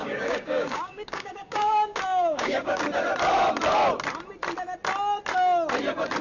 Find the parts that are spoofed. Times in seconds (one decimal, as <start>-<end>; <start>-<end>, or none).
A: 0.0-2.8

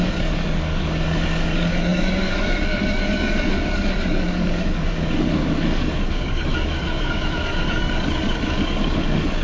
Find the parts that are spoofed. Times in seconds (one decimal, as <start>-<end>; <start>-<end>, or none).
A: 0.0-9.4